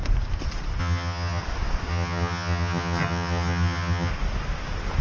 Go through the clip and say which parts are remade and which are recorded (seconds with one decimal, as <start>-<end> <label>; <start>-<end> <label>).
0.0-0.8 recorded; 0.8-1.4 remade; 1.4-1.9 recorded; 1.9-4.1 remade; 4.1-5.0 recorded